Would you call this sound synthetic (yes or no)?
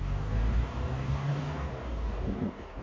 yes